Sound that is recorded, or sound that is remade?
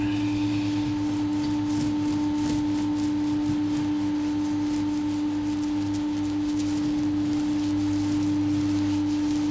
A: recorded